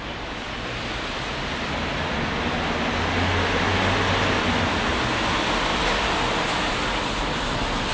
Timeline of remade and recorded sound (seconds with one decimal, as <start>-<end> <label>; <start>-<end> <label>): 0.0-7.9 recorded